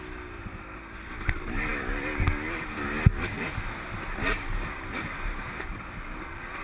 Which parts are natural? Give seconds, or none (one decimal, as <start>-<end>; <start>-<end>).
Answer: 0.0-6.6